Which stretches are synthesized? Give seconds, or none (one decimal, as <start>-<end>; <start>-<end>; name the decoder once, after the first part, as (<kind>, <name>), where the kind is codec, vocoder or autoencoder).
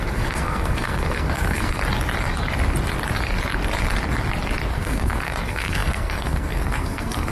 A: 0.0-1.8 (codec, SNAC); 4.7-7.3